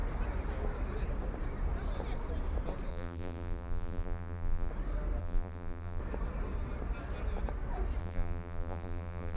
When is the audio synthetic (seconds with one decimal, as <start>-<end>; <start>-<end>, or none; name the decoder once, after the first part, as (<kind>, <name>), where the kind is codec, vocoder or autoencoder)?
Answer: 2.9-4.7 (vocoder, BigVGAN v2); 5.2-6.0; 8.0-9.4